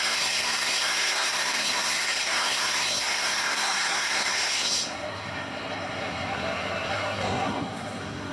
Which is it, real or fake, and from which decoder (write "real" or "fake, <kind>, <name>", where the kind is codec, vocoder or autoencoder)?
fake, codec, SNAC